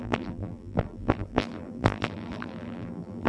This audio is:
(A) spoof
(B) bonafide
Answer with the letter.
A